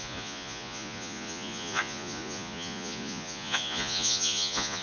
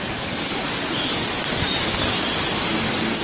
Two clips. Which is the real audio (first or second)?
second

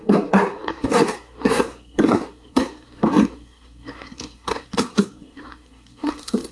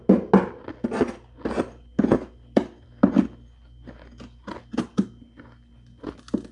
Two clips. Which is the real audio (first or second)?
second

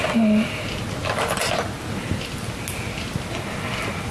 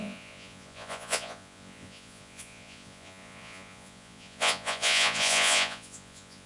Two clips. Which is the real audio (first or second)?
first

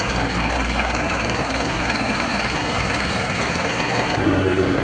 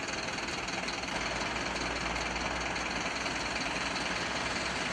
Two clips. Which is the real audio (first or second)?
second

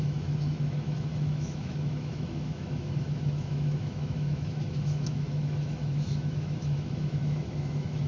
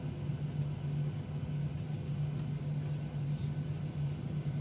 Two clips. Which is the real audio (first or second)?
second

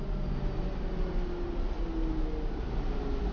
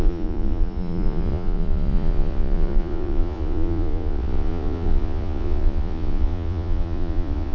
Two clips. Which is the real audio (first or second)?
first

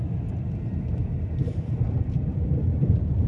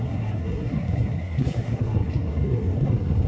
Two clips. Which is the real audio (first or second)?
first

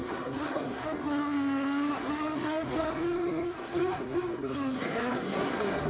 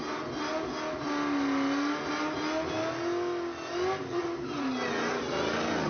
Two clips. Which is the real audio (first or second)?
second